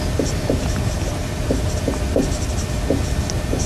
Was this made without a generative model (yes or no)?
yes